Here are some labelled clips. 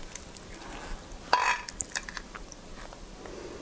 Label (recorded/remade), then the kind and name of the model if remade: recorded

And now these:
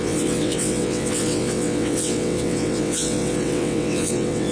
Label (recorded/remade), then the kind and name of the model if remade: remade, vocoder, WaveNeXt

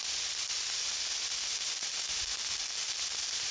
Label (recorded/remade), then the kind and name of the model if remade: recorded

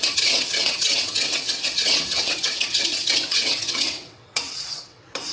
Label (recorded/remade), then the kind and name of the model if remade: remade, vocoder, WaveNeXt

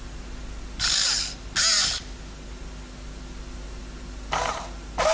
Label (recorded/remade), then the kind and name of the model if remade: recorded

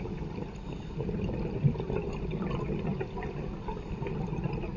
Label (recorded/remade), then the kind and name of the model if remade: recorded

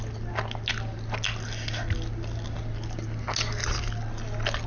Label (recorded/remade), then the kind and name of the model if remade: recorded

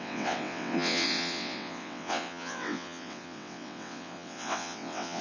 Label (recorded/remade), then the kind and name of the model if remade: remade, vocoder, WaveNeXt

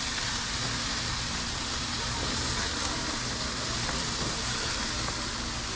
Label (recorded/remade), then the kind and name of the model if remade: recorded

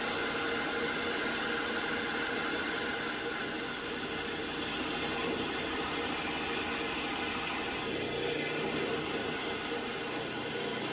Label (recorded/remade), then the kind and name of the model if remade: recorded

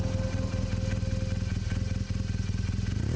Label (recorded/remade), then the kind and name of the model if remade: recorded